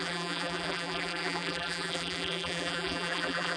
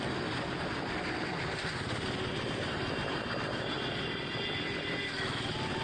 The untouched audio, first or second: second